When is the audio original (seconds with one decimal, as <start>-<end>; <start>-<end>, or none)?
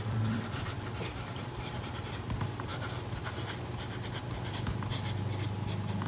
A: 2.7-6.1